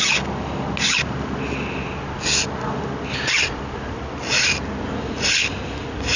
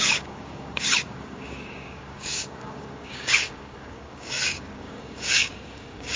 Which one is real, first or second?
first